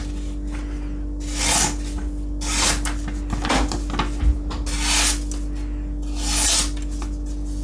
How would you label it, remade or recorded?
recorded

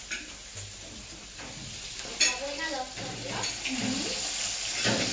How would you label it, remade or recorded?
recorded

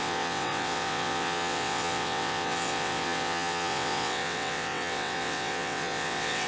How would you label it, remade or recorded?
remade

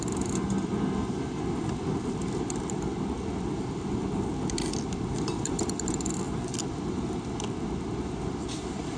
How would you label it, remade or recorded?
recorded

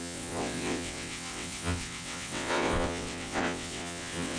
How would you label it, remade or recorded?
remade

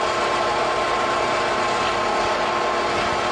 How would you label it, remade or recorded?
recorded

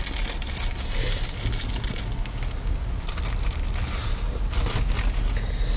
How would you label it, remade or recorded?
recorded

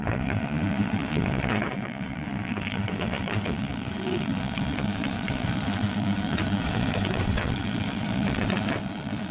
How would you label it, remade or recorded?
remade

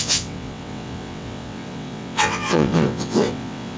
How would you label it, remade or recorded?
remade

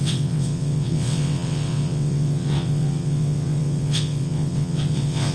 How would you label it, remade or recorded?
remade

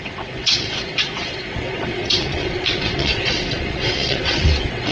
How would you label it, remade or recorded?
remade